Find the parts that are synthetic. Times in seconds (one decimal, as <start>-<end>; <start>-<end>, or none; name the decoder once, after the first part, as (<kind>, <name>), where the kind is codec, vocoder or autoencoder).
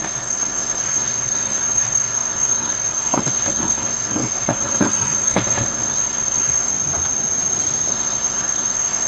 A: 0.0-6.7 (codec, SNAC); 7.9-9.1